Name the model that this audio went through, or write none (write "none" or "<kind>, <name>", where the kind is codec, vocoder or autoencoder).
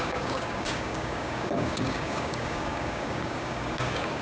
codec, DAC